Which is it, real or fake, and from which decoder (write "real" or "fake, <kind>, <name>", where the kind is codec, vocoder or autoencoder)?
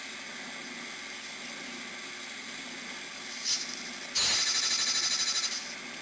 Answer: real